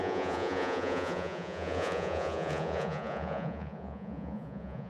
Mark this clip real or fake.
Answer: fake